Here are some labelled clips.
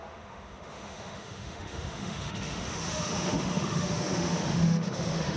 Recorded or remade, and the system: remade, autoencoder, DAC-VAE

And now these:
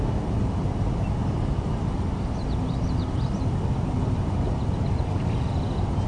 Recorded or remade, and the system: recorded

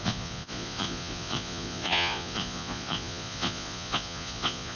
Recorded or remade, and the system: remade, vocoder, Vocos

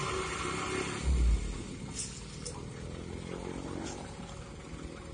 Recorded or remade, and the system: recorded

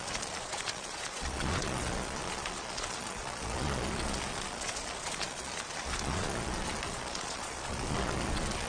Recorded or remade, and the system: remade, vocoder, Vocos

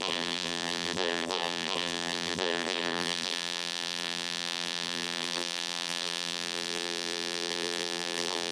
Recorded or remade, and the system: remade, vocoder, BigVGAN v2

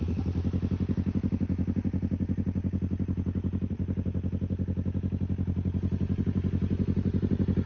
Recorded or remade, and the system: recorded